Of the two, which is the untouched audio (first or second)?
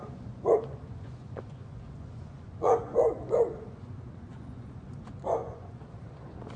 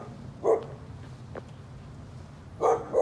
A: second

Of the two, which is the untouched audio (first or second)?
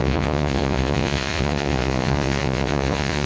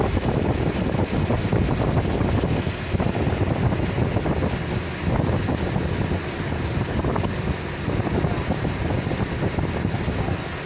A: second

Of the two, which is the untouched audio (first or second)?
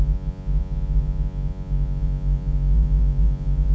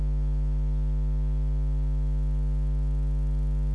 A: second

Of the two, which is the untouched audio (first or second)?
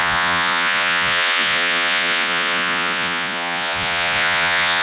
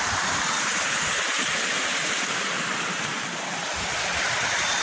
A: second